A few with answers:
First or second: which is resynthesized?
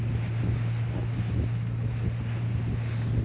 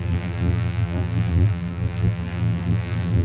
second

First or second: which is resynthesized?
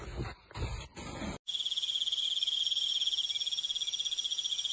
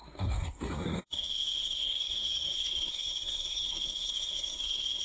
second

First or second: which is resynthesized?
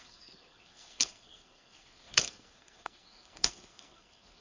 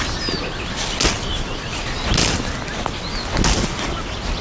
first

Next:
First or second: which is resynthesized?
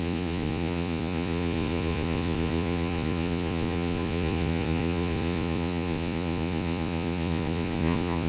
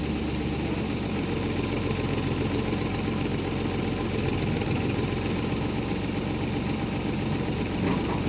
first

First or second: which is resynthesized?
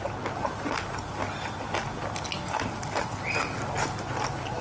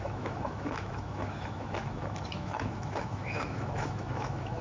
second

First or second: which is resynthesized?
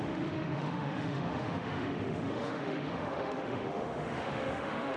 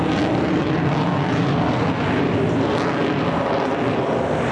first